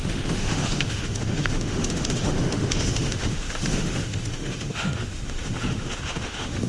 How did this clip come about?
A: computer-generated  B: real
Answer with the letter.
A